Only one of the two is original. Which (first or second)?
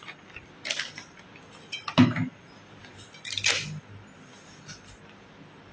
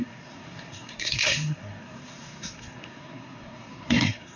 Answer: first